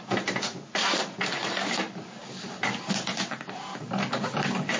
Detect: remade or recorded recorded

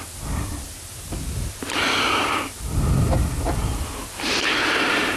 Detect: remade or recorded recorded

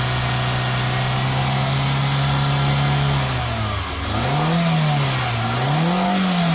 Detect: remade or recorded recorded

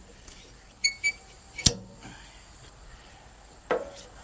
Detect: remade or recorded recorded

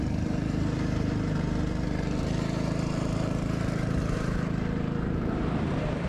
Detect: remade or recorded remade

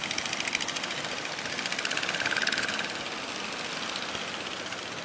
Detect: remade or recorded recorded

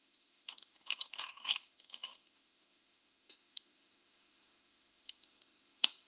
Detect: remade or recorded remade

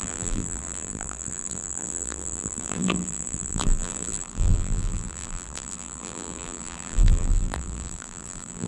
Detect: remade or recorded remade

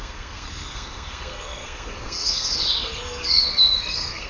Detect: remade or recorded remade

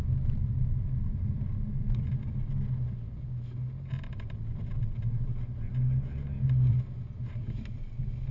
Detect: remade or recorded recorded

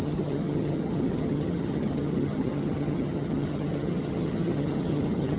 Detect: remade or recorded remade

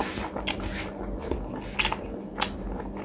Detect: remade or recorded recorded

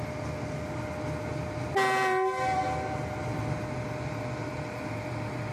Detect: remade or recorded recorded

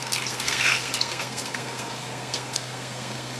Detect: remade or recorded remade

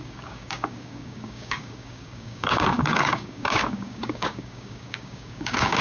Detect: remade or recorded remade